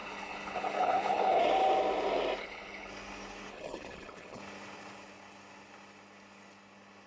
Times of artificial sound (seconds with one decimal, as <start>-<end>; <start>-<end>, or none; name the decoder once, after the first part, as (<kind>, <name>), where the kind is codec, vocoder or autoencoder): 0.0-1.4 (codec, HILCodec); 2.4-2.9; 3.5-4.4